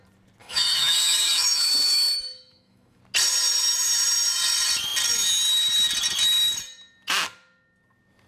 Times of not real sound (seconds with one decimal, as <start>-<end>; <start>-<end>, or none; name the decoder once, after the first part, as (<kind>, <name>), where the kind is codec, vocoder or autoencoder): 0.4-3.0 (autoencoder, DAC-VAE)

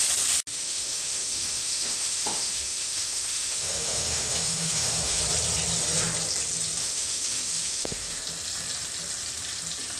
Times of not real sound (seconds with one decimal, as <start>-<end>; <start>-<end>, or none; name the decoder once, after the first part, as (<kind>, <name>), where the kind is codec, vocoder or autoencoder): 0.5-5.2 (autoencoder, DAC-VAE); 6.8-8.2

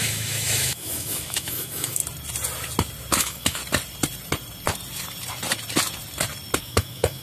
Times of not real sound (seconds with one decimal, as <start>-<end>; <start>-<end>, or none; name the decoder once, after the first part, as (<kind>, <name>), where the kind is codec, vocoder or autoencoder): 0.0-2.0 (autoencoder, DAC-VAE); 3.2-3.6; 6.6-7.2

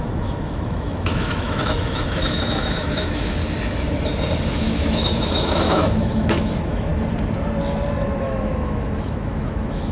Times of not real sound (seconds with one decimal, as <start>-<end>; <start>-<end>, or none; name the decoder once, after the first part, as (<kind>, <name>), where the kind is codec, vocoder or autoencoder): 0.0-3.4 (autoencoder, DAC-VAE); 4.5-6.9; 8.2-9.9

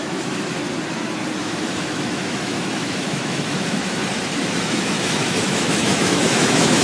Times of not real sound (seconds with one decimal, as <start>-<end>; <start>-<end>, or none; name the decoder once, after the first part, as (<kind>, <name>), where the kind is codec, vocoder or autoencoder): 0.0-0.6 (autoencoder, DAC-VAE); 1.4-4.0; 4.6-6.8